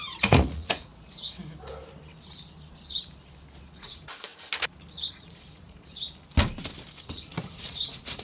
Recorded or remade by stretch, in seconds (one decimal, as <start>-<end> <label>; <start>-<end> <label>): 0.0-0.9 remade; 0.9-3.6 recorded; 3.6-4.3 remade; 4.3-5.1 recorded; 5.1-5.9 remade; 5.9-7.1 recorded; 7.1-8.2 remade